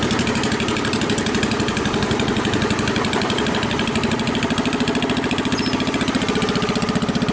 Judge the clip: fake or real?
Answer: real